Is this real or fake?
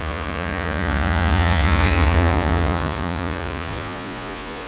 fake